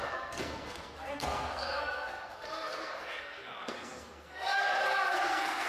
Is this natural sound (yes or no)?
no